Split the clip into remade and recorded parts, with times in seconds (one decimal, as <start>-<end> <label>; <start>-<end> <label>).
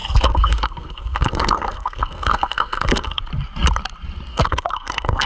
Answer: 0.0-3.2 remade; 3.2-4.3 recorded; 4.3-5.3 remade